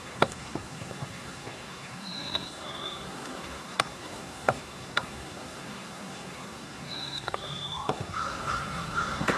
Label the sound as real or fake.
fake